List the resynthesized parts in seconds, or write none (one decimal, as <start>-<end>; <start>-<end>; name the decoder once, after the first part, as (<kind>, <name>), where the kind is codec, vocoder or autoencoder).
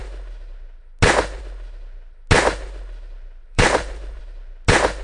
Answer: 3.4-4.2 (vocoder, BigVGAN v2)